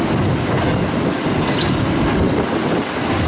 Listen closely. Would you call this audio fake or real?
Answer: real